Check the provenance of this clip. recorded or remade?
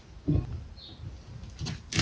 recorded